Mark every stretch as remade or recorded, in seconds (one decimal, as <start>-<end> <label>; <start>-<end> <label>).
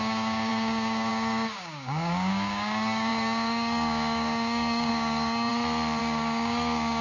0.0-5.5 remade; 5.5-6.0 recorded; 6.0-7.0 remade